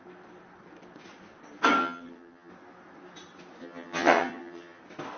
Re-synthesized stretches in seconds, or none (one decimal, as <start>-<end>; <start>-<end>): 1.8-2.5; 3.6-4.8